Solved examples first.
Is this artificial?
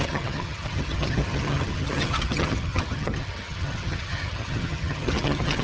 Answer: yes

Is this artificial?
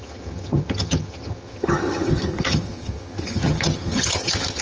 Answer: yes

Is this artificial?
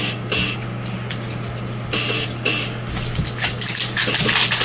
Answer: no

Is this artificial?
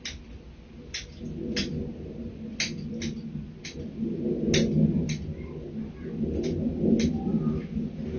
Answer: no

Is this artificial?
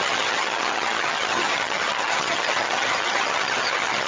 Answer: yes